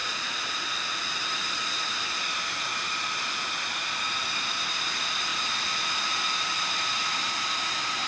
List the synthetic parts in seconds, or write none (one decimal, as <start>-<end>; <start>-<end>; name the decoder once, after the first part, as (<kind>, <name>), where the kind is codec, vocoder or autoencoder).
0.0-0.5 (vocoder, Vocos)